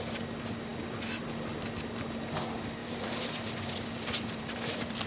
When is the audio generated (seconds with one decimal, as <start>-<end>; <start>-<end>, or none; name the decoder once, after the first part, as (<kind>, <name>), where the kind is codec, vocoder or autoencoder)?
2.8-5.1 (vocoder, BigVGAN v2)